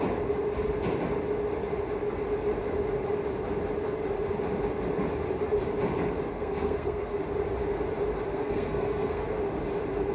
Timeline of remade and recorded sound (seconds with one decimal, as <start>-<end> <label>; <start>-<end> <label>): 0.0-6.3 recorded; 6.3-7.2 remade; 7.2-8.3 recorded; 8.3-9.4 remade; 9.4-10.1 recorded